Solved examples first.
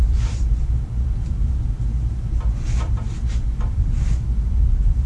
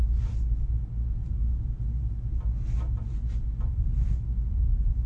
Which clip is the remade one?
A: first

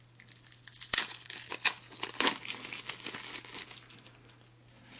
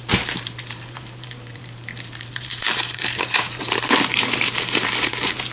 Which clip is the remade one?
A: second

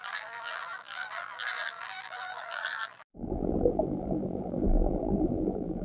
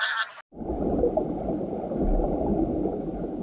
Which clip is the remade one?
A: first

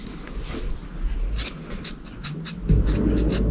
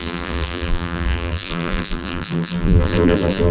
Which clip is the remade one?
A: second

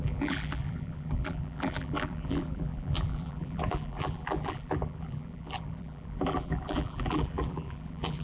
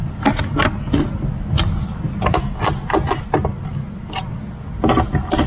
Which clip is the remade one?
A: first